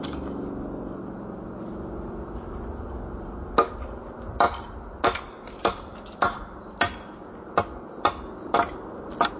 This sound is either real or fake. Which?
real